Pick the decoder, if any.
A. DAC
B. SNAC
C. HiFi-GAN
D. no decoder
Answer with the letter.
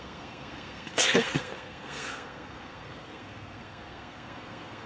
B